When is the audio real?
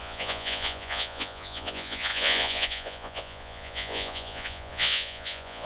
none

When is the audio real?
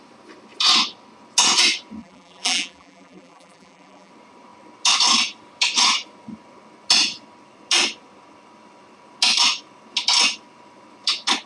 0.0-2.0; 4.1-11.5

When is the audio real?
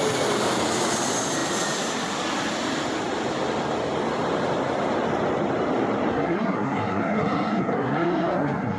0.0-6.1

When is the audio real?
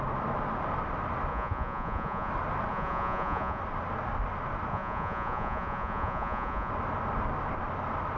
0.0-1.3; 2.3-2.7; 3.6-4.7; 6.7-8.2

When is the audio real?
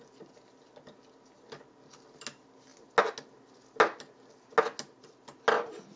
0.0-6.0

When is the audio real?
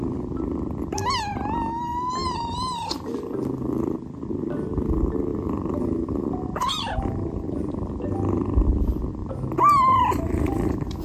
0.0-1.9; 3.1-5.3; 7.7-9.2